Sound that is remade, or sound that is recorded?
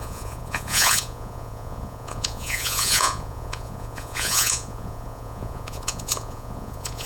remade